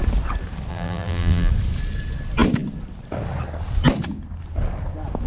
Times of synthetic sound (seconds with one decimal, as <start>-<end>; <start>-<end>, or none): 0.7-1.5